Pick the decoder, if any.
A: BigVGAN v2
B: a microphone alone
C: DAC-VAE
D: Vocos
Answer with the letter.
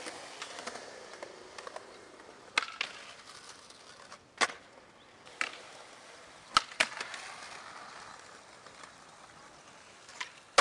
B